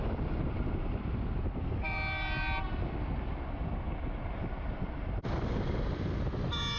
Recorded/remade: recorded